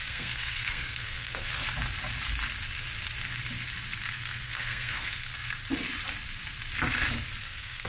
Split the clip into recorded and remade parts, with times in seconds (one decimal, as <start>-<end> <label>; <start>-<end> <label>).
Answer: 0.0-1.6 remade; 1.6-4.1 recorded; 4.1-5.6 remade; 5.6-7.4 recorded; 7.4-7.9 remade

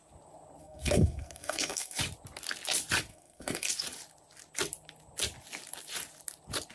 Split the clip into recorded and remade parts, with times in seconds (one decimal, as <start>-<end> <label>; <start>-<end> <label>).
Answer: 0.0-0.6 recorded; 0.6-2.0 remade; 2.0-3.1 recorded; 3.1-3.7 remade; 3.7-6.7 recorded

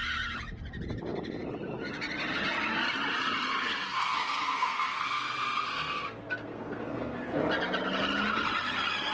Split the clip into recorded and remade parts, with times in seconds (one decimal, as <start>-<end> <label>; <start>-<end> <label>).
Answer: 0.0-3.9 recorded; 3.9-7.4 remade; 7.4-9.1 recorded

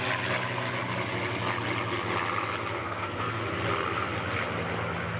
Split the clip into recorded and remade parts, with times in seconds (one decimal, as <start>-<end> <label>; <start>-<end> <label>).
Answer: 0.0-2.8 recorded; 2.8-3.4 remade; 3.4-5.2 recorded

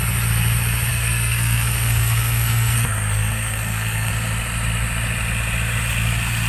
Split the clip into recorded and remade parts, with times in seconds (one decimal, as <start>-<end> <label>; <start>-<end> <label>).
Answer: 0.0-0.9 recorded; 0.9-4.1 remade; 4.1-6.5 recorded

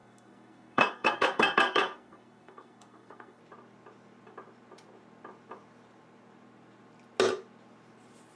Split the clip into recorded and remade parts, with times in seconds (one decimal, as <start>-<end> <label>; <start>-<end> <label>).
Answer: 0.0-3.4 remade; 3.4-8.4 recorded